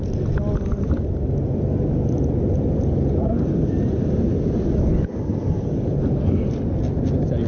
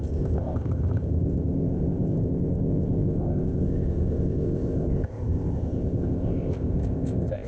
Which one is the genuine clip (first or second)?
first